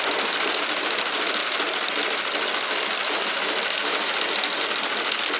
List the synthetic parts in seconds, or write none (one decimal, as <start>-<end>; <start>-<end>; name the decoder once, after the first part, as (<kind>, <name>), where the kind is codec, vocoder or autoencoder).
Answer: none